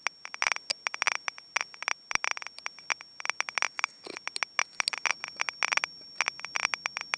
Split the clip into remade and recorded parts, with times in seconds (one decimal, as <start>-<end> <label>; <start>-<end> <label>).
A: 0.0-7.2 recorded